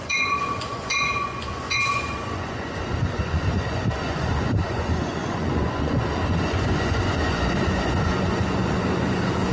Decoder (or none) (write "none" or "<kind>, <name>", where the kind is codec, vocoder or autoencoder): vocoder, Vocos